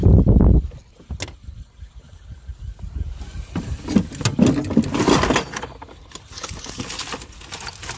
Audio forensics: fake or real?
real